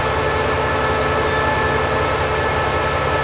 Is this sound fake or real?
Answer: real